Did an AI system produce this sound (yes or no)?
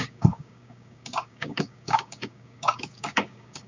yes